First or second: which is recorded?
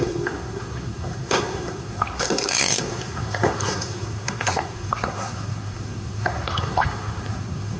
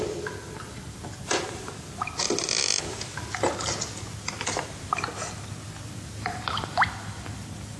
second